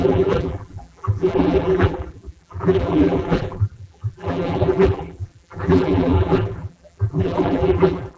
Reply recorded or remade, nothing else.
remade